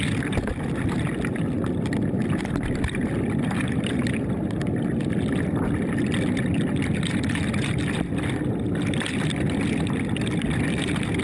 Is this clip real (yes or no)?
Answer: yes